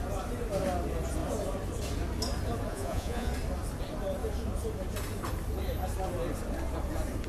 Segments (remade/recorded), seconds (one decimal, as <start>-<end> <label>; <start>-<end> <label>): 0.0-2.7 recorded; 2.7-3.3 remade; 3.3-7.3 recorded